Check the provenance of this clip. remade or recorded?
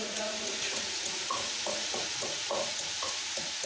remade